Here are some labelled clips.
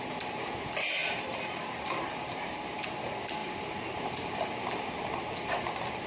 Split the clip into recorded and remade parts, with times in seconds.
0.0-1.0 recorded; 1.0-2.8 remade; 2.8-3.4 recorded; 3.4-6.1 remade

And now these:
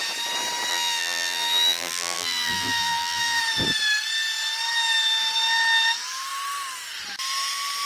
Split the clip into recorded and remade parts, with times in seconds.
0.0-0.7 recorded; 0.7-3.4 remade; 3.4-7.9 recorded

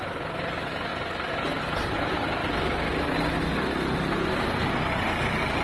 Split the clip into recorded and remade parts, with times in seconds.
0.0-0.9 remade; 0.9-1.6 recorded; 1.6-2.4 remade; 2.4-4.4 recorded; 4.4-5.6 remade